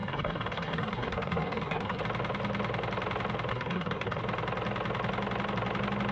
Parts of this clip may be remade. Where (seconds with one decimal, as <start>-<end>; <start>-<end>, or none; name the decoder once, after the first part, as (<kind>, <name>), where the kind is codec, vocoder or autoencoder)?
0.0-2.0 (codec, SNAC); 3.5-4.2